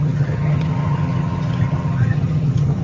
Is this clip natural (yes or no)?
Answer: no